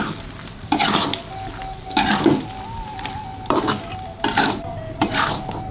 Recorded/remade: remade